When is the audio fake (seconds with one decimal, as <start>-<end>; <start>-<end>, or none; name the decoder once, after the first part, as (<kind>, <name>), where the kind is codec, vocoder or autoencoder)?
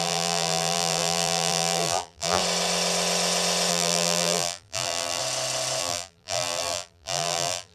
0.0-2.4 (vocoder, BigVGAN v2); 3.7-5.2; 5.8-7.7